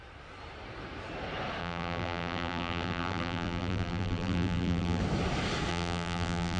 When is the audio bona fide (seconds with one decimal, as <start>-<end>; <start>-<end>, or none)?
0.0-1.6; 5.0-5.7